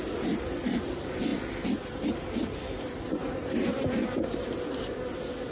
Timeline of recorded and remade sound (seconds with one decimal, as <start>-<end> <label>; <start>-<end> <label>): 0.0-5.5 recorded